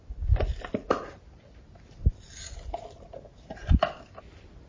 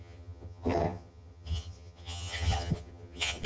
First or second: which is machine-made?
second